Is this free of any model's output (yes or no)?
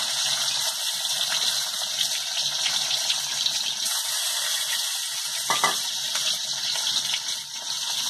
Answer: yes